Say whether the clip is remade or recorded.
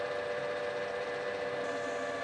recorded